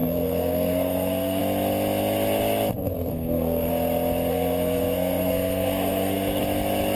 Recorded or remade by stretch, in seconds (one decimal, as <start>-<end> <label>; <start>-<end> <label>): 0.0-1.4 remade; 1.4-3.1 recorded; 3.1-3.7 remade; 3.7-4.3 recorded; 4.3-6.4 remade; 6.4-7.0 recorded